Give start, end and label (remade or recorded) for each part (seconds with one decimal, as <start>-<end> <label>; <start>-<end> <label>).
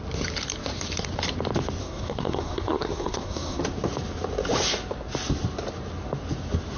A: 0.0-1.8 recorded; 1.8-3.6 remade; 3.6-6.8 recorded